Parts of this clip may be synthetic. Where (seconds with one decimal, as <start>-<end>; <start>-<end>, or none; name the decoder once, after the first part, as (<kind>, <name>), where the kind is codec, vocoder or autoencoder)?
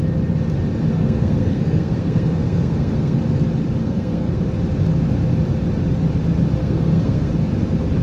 0.9-3.2 (codec, SNAC); 3.8-4.4; 6.6-7.3